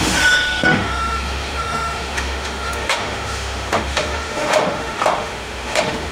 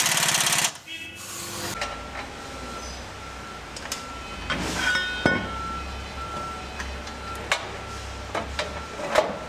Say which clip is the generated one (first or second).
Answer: first